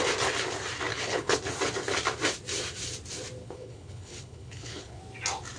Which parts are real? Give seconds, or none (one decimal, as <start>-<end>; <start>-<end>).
0.0-0.9; 1.4-3.4; 5.0-5.6

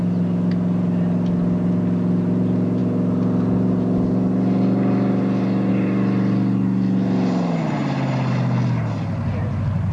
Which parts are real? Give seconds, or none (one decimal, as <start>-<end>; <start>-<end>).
0.0-9.9

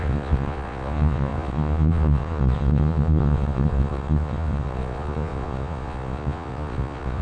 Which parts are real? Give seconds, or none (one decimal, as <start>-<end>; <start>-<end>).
none

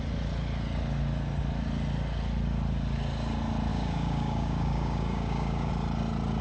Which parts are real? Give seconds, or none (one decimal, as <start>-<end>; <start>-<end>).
0.0-3.7; 5.7-6.4

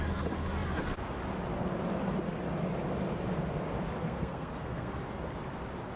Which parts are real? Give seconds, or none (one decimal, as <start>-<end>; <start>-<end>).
0.0-4.0; 4.9-6.0